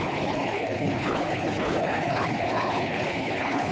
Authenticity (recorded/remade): remade